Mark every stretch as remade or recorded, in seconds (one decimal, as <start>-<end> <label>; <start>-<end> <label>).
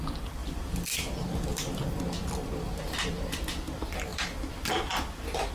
0.0-0.4 recorded; 0.4-1.9 remade; 1.9-5.5 recorded